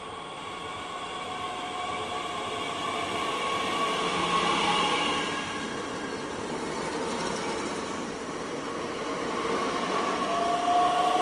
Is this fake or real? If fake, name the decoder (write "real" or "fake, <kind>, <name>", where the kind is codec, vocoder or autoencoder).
real